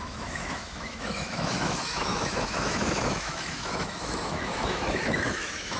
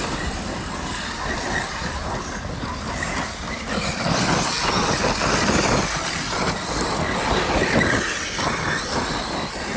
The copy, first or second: first